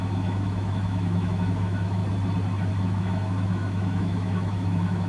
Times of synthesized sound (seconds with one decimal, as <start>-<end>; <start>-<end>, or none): 0.0-2.0; 2.8-5.1

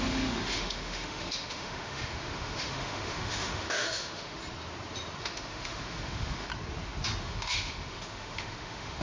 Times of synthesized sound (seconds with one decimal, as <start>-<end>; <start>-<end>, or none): 0.0-4.4; 5.2-6.5; 7.2-9.0

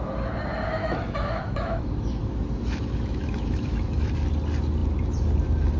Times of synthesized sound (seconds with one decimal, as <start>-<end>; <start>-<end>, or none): 0.8-4.1

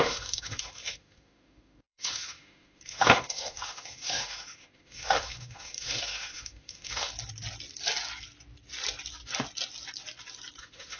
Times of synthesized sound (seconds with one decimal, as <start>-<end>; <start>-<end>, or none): 0.0-7.1; 10.6-11.0

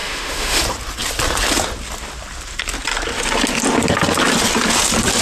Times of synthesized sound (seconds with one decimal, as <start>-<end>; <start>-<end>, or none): 0.0-0.6

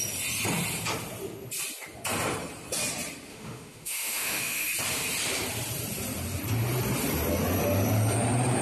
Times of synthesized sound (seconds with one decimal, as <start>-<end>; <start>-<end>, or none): 3.3-4.7